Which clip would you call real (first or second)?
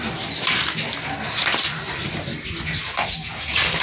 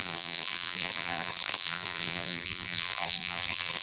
first